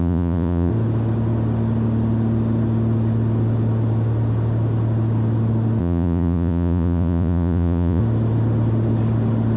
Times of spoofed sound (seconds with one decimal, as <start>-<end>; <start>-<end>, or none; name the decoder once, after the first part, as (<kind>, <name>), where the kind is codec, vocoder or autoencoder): 0.0-0.7 (vocoder, Vocos); 5.8-8.0